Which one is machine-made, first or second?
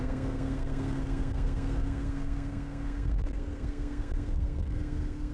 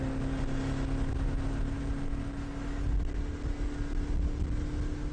first